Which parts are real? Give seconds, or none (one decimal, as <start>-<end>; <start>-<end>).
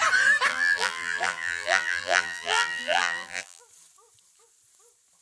0.0-0.5; 3.6-5.2